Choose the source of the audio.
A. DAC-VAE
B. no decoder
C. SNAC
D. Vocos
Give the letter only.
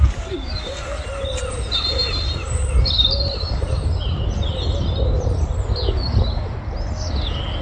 B